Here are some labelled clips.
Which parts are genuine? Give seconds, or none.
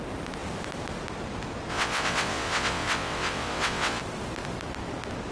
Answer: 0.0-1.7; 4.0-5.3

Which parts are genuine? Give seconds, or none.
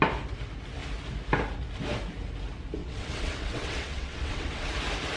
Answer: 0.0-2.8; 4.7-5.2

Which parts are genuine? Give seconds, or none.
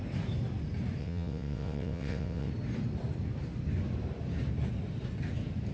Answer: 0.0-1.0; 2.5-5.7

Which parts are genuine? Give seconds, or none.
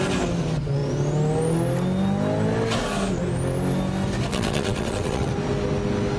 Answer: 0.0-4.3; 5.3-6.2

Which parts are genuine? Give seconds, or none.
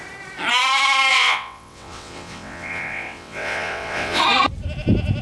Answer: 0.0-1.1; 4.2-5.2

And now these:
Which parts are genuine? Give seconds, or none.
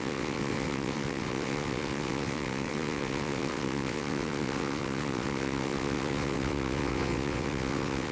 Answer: none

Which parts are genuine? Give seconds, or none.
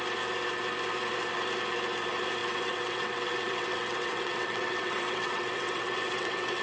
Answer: 0.0-2.4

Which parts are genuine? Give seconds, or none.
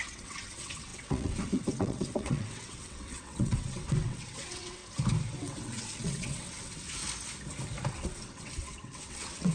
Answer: 4.8-5.4; 7.0-7.9